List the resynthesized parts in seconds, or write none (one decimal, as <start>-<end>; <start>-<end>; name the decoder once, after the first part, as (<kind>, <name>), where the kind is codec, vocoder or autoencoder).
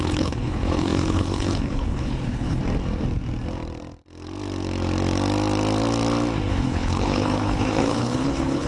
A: 0.0-2.6 (codec, HILCodec); 6.5-8.7